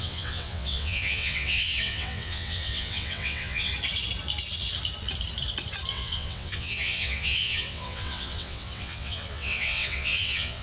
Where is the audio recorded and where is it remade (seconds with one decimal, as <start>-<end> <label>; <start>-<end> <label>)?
0.0-3.7 remade; 3.7-5.9 recorded; 5.9-10.6 remade

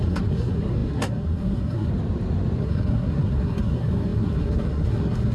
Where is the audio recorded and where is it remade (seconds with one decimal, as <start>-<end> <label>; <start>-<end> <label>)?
0.0-1.9 remade; 1.9-2.6 recorded; 2.6-5.3 remade

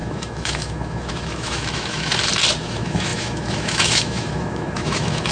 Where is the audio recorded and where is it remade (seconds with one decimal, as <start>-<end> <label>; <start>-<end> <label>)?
0.0-2.1 remade; 2.1-2.6 recorded; 2.6-5.3 remade

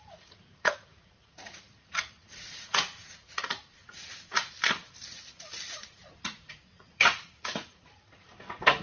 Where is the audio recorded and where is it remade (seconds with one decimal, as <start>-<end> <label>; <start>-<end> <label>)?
0.0-3.8 remade; 3.8-5.7 recorded; 5.7-8.8 remade

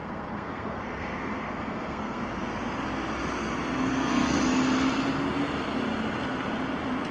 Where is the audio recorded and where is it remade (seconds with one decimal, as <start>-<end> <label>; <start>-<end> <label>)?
0.0-2.2 remade; 2.2-3.9 recorded; 3.9-4.4 remade; 4.4-7.1 recorded

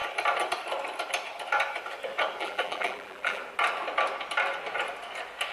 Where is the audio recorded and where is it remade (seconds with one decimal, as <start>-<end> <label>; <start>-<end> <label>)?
0.0-2.4 recorded; 2.4-3.4 remade; 3.4-5.5 recorded